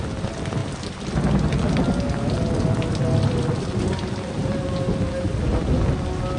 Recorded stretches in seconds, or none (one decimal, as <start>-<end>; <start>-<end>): 0.0-6.4